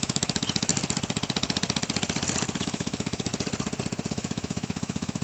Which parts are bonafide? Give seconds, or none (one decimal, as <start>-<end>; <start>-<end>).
0.7-2.6; 3.3-4.1